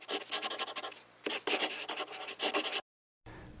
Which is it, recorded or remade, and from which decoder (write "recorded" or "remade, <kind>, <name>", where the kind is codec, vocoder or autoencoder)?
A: recorded